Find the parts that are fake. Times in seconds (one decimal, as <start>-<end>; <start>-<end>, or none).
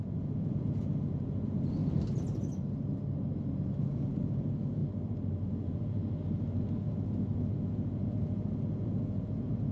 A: 0.0-1.8; 3.8-4.8; 5.5-6.0; 7.4-9.7